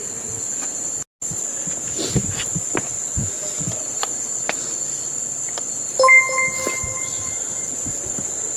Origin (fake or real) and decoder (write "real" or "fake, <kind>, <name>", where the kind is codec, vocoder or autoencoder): real